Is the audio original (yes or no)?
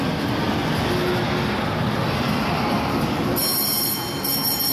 yes